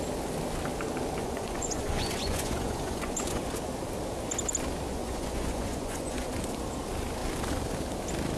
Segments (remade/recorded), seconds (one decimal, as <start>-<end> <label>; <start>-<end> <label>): 0.0-1.2 recorded; 1.2-3.4 remade; 3.4-4.9 recorded; 4.9-6.3 remade; 6.3-8.4 recorded